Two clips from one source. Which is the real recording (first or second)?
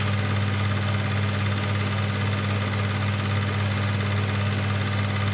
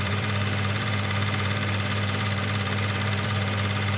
first